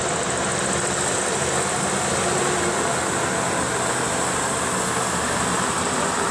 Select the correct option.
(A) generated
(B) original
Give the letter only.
B